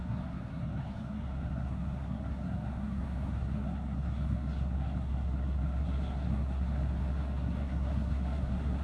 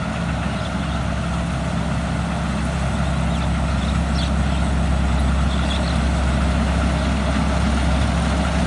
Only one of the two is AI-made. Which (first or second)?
first